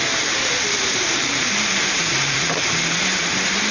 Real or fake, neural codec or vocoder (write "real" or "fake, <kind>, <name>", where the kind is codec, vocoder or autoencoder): fake, vocoder, BigVGAN v2